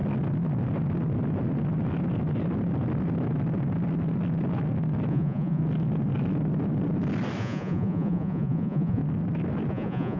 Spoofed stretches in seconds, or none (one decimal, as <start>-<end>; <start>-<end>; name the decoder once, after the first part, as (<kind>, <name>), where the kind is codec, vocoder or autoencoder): 5.1-5.6 (vocoder, Vocos); 7.4-9.0; 9.7-10.2